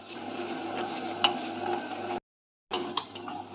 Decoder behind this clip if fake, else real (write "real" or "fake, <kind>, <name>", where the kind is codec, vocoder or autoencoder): real